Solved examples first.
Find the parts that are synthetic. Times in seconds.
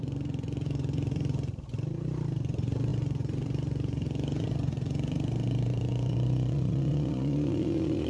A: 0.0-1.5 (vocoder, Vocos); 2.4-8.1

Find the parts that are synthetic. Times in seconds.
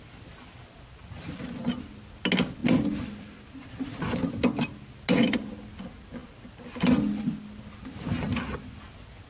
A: none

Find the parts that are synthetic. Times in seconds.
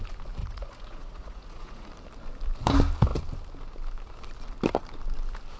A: 0.4-1.9 (vocoder, Vocos)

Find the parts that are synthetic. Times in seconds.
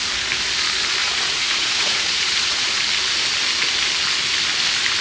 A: 1.0-2.8 (vocoder, Vocos)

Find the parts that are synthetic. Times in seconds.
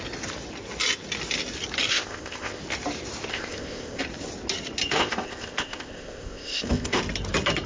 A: 1.9-2.6 (codec, ZipCodec); 3.3-4.0; 5.0-7.0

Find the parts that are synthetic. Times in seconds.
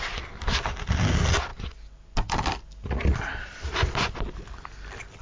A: none